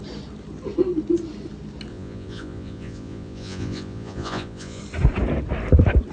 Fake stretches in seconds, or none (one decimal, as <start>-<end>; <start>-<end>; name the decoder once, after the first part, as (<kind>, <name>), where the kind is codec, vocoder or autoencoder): 1.9-4.8 (vocoder, Vocos)